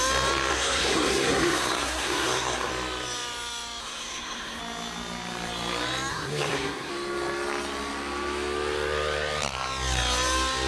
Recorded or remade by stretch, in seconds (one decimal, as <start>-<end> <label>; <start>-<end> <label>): 0.0-0.5 recorded; 0.5-2.7 remade; 2.7-3.8 recorded; 3.8-4.6 remade; 4.6-6.1 recorded; 6.1-6.9 remade; 6.9-10.7 recorded